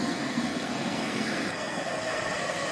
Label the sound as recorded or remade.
remade